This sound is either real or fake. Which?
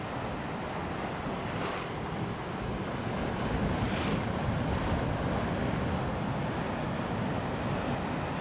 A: real